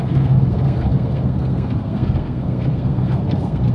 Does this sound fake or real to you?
fake